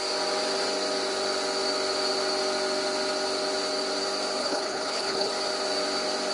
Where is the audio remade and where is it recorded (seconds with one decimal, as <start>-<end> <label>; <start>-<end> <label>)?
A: 0.0-4.4 recorded; 4.4-5.3 remade; 5.3-6.3 recorded